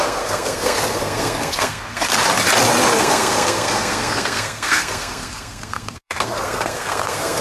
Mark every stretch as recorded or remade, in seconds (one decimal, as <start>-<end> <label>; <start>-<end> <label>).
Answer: 0.0-2.1 remade; 2.1-3.0 recorded; 3.0-7.4 remade